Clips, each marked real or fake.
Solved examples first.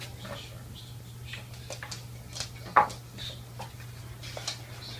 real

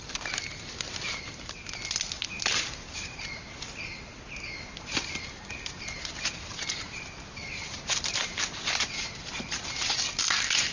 real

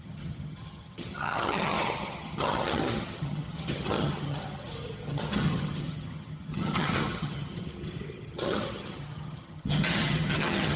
fake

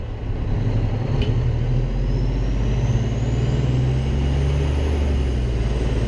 real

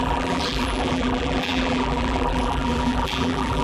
fake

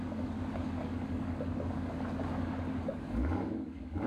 fake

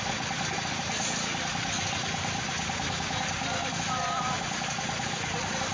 real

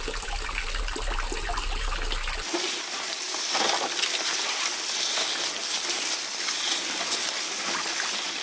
real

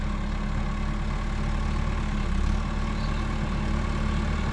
real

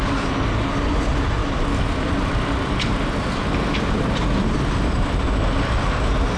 real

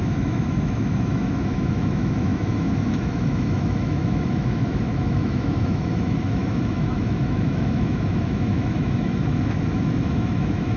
fake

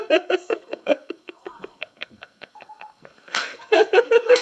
fake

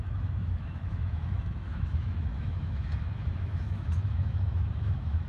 fake